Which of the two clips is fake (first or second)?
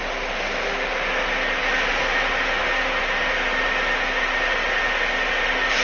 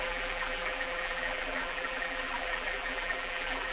second